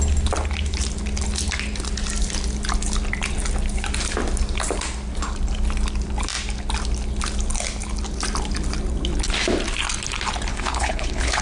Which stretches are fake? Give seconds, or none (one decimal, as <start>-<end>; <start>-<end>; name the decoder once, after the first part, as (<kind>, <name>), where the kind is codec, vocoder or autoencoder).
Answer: 10.5-11.4 (codec, HILCodec)